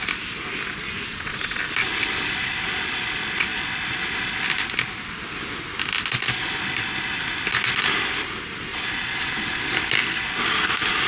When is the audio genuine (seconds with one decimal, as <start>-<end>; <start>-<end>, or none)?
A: 0.0-1.1; 1.6-8.7; 9.6-11.1